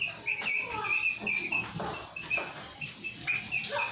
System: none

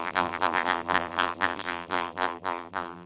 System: vocoder, BigVGAN v2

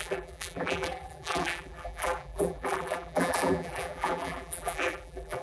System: vocoder, BigVGAN v2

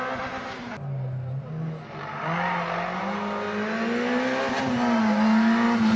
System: none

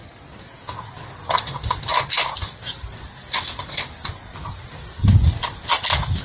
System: none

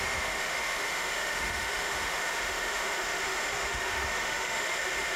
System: autoencoder, DAC-VAE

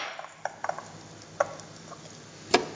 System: none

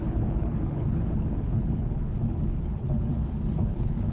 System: codec, HILCodec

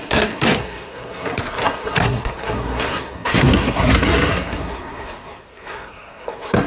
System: codec, SNAC